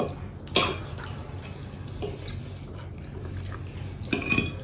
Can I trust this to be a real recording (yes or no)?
yes